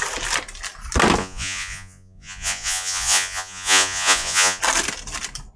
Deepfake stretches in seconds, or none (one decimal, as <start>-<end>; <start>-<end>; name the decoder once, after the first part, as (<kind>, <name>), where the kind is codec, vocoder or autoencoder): 1.2-4.6 (vocoder, Vocos)